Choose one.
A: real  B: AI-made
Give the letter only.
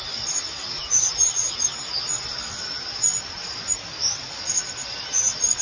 A